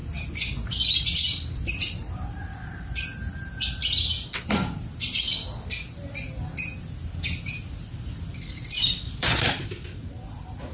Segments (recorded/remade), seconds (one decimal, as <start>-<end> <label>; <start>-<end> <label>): 0.0-1.0 recorded; 1.0-3.1 remade; 3.1-8.2 recorded; 8.2-10.7 remade